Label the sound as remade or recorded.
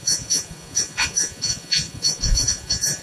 remade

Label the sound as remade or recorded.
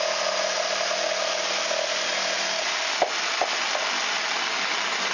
recorded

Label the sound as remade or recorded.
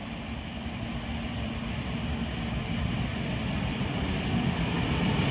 remade